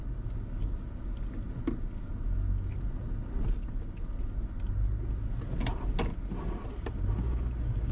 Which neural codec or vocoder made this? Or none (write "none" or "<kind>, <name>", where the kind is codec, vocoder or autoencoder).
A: none